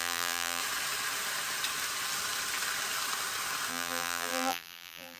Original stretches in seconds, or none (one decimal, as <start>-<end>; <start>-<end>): 0.6-3.7